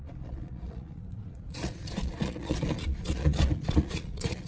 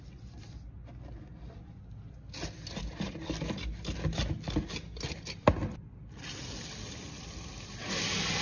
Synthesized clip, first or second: first